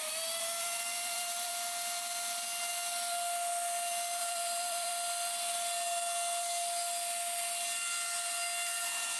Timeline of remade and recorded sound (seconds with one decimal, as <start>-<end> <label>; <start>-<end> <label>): 0.0-1.5 remade; 1.5-4.2 recorded; 4.2-4.9 remade; 4.9-9.2 recorded